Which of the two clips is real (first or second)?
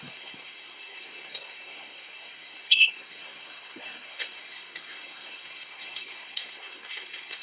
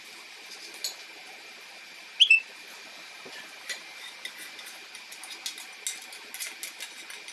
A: second